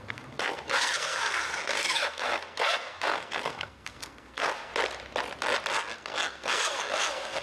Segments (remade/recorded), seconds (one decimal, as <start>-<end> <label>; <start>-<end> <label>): 0.0-4.7 remade; 4.7-5.7 recorded; 5.7-7.4 remade